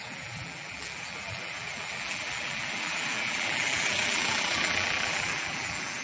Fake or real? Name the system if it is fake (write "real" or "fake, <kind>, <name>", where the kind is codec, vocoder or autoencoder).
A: fake, vocoder, BigVGAN v2